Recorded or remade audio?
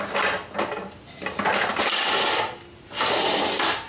recorded